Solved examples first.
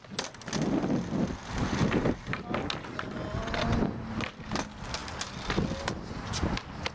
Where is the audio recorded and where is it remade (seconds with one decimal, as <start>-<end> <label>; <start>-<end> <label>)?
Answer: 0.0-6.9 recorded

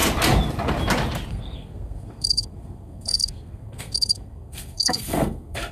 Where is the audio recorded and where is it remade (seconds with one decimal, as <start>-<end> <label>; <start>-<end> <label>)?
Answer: 0.0-1.3 recorded; 1.3-5.7 remade

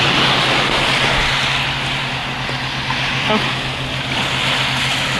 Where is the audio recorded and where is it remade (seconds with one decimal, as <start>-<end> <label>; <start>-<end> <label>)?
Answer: 0.0-5.2 recorded

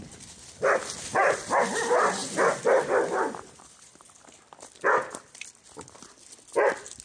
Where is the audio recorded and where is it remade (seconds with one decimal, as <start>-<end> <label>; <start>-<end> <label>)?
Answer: 0.0-7.0 remade

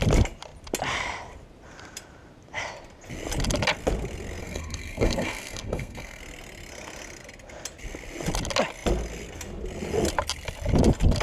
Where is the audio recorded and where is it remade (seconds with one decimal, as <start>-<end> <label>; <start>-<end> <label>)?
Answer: 0.0-4.4 recorded; 4.4-6.2 remade; 6.2-11.2 recorded